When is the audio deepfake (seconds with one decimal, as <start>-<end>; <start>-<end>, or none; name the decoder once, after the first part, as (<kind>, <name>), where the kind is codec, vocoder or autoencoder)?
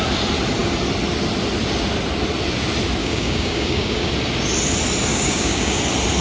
3.0-4.1 (codec, DAC); 5.1-5.8